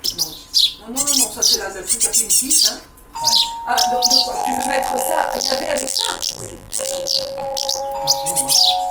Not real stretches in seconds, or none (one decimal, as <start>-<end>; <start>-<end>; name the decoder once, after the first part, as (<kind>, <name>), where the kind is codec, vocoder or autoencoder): 4.4-7.8 (vocoder, BigVGAN v2)